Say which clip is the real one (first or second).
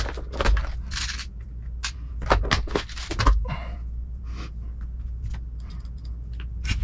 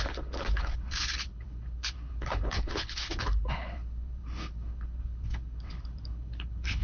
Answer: first